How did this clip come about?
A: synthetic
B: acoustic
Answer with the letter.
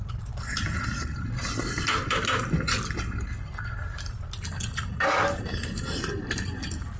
B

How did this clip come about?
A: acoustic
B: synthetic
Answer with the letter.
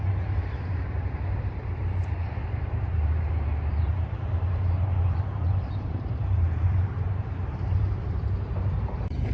B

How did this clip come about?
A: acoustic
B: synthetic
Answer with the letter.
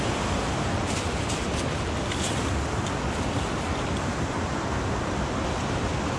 A